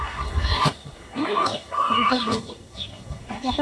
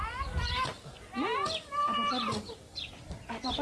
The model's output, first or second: first